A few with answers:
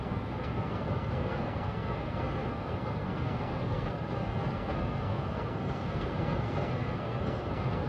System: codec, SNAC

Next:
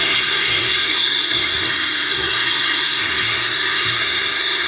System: codec, SNAC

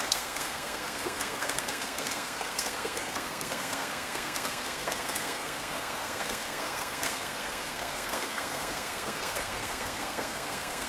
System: codec, SNAC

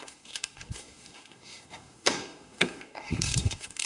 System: codec, SNAC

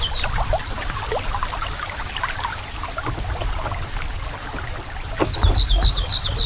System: none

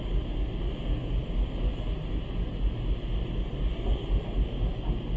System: none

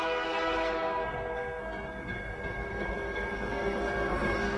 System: codec, SNAC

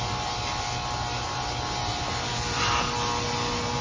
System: none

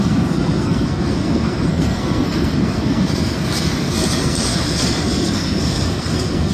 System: codec, SNAC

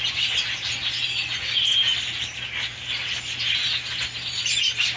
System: none